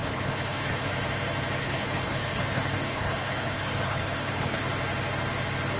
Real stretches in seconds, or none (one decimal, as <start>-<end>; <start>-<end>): 0.9-1.6; 4.6-5.8